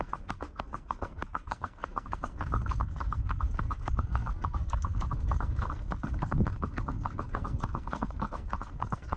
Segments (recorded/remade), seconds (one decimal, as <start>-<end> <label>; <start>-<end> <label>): 0.0-9.2 remade